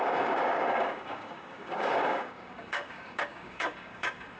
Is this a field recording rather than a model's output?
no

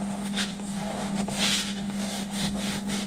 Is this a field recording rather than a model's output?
no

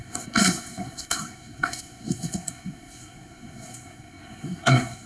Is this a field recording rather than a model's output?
no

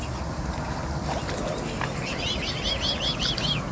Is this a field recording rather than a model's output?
yes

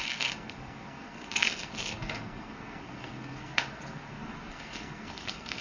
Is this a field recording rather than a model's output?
no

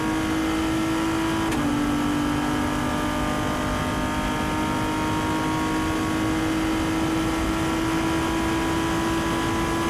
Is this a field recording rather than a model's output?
yes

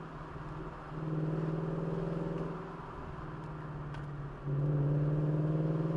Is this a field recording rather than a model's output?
yes